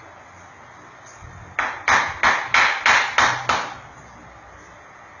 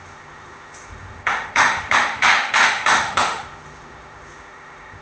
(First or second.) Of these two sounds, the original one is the first